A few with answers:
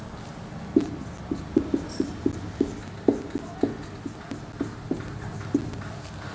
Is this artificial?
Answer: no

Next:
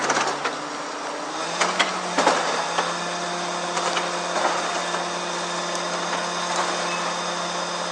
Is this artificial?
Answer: no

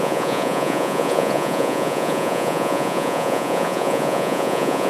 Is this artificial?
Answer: yes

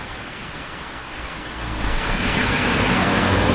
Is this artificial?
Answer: yes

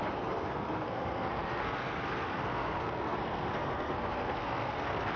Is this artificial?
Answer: yes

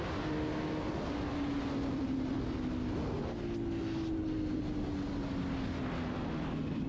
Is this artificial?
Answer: no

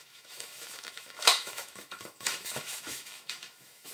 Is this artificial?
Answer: yes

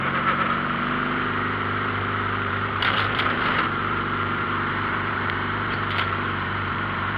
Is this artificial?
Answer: yes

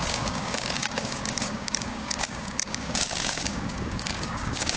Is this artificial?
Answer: yes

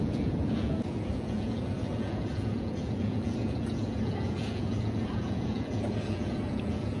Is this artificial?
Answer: yes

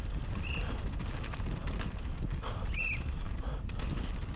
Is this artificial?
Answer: no